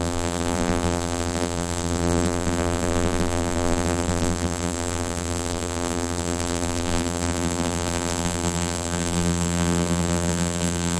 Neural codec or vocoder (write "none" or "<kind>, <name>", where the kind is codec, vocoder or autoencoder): vocoder, BigVGAN v2